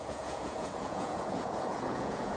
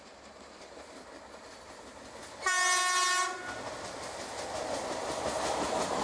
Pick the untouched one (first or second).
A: second